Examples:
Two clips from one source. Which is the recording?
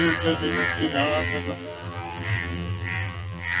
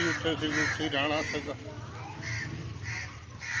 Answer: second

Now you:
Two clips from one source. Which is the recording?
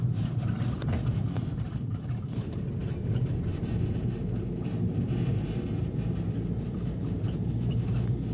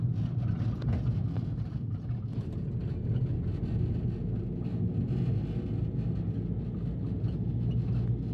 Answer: second